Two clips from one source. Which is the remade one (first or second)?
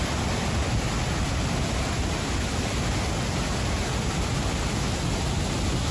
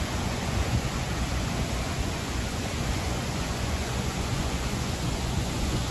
second